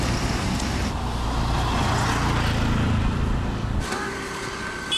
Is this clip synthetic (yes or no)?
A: no